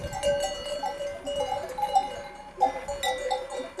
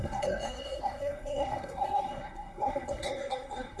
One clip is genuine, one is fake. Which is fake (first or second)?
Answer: second